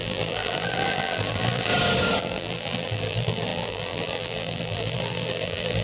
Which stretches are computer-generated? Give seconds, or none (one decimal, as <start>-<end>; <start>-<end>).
0.0-1.7; 2.2-5.8